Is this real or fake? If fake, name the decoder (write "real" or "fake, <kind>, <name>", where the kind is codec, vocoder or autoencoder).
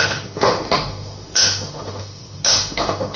fake, autoencoder, DAC-VAE